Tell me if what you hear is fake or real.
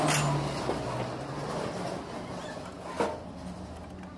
real